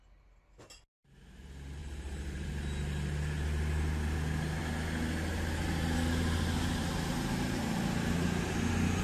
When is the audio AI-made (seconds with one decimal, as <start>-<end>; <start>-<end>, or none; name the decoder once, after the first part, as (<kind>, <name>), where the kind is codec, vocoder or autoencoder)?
1.8-2.5 (vocoder, BigVGAN v2)

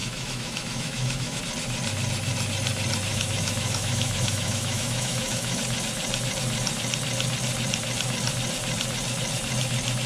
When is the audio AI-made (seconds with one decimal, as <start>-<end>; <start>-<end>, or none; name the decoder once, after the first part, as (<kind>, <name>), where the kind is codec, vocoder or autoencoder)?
0.0-1.4 (autoencoder, DAC-VAE); 3.1-5.6

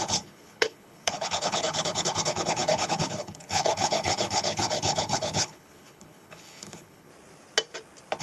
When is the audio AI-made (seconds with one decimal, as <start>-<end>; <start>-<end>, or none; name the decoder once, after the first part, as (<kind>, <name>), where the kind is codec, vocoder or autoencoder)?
0.0-7.1 (codec, HILCodec)

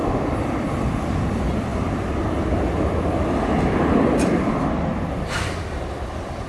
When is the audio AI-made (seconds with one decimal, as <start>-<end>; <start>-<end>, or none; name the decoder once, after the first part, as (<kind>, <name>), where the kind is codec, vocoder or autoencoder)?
0.0-1.7 (vocoder, BigVGAN v2); 4.5-6.5

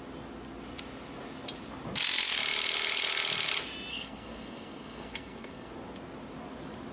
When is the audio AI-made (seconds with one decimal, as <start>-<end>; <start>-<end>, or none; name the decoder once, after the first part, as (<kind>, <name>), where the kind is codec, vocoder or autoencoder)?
3.9-5.7 (codec, SNAC)

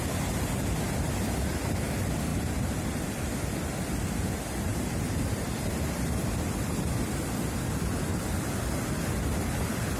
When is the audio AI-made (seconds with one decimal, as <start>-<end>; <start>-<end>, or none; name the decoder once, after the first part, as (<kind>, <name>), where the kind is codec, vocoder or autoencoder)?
2.3-3.8 (vocoder, BigVGAN v2); 4.7-5.2

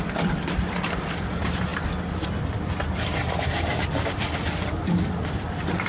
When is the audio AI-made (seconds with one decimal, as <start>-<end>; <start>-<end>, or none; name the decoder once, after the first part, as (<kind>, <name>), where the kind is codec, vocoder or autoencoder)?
0.0-5.9 (vocoder, BigVGAN v2)

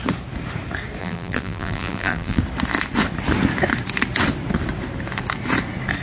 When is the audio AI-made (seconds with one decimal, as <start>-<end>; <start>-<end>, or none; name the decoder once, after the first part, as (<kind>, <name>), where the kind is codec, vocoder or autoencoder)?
1.0-2.4 (vocoder, BigVGAN v2)